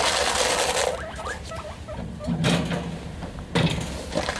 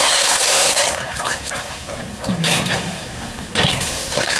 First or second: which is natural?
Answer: first